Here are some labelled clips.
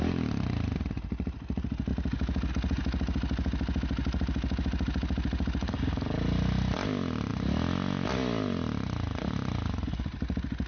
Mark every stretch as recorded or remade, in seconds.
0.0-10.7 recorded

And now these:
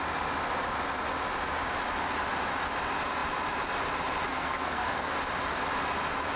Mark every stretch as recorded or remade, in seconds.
0.0-4.3 recorded; 4.3-5.1 remade; 5.1-6.4 recorded

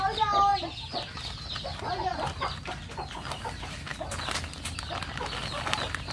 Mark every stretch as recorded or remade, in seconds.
0.0-2.1 recorded; 2.1-3.2 remade; 3.2-6.1 recorded

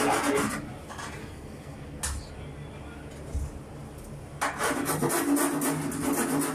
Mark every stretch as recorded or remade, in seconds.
0.0-1.2 recorded; 1.2-2.0 remade; 2.0-6.5 recorded